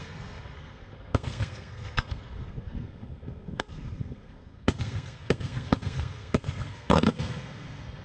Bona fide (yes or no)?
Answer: no